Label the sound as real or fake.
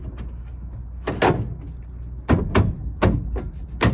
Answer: real